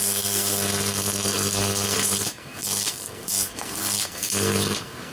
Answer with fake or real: fake